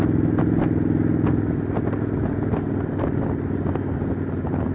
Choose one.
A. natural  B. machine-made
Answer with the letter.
A